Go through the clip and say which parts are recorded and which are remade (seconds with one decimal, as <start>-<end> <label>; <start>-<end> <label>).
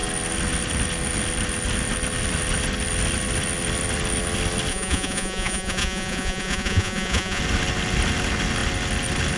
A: 0.0-4.7 recorded; 4.7-7.4 remade; 7.4-9.4 recorded